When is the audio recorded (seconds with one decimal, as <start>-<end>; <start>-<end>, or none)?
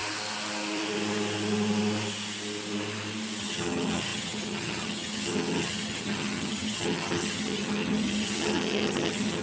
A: 0.0-3.4